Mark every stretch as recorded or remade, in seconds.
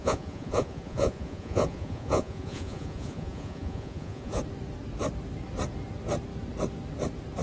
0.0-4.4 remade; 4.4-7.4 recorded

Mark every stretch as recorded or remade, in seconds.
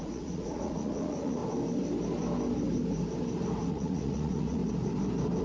0.0-1.4 remade; 1.4-3.7 recorded; 3.7-4.6 remade; 4.6-5.4 recorded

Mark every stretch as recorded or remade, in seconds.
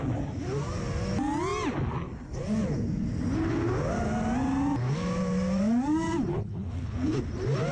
0.0-6.3 recorded; 6.3-7.2 remade; 7.2-7.7 recorded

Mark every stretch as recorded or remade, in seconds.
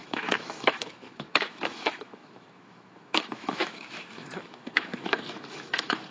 0.0-6.1 remade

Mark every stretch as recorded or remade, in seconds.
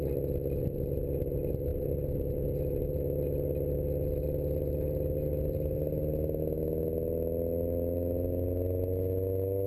0.0-9.7 recorded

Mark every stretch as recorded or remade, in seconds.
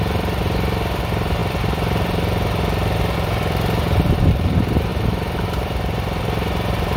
0.0-7.0 remade